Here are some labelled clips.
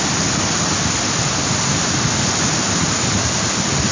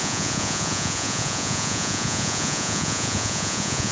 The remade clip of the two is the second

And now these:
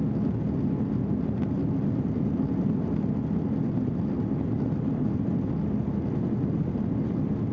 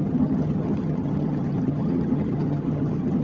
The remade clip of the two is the second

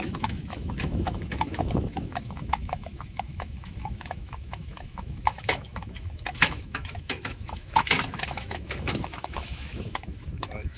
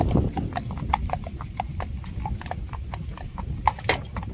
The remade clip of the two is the first